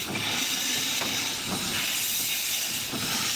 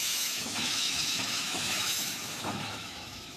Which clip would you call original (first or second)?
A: first